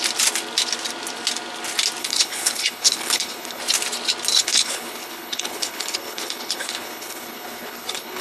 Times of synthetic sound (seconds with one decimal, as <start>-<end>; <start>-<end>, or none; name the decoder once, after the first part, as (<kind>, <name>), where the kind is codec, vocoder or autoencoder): 2.0-3.6 (codec, HILCodec); 4.3-8.2